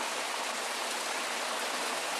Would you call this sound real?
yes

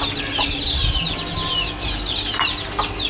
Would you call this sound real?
yes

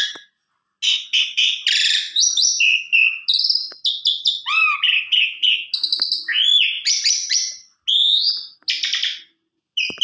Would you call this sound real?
yes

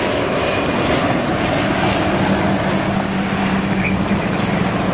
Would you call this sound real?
yes